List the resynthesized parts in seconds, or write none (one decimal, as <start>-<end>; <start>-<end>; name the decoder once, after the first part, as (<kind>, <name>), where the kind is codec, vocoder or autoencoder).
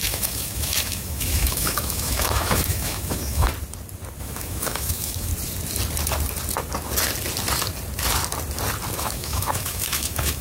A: 0.0-3.5 (autoencoder, DAC-VAE); 4.2-5.3; 9.0-10.4